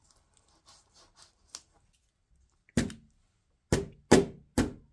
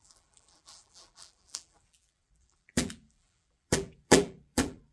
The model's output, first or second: second